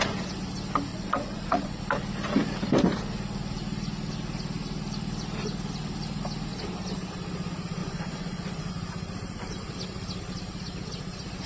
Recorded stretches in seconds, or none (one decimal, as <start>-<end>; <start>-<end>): 0.0-0.9; 1.8-7.8; 8.7-11.5